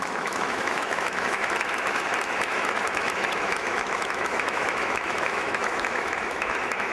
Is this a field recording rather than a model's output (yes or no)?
no